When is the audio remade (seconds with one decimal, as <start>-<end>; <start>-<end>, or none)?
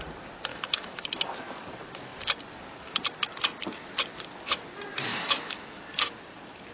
0.5-1.0; 5.1-5.8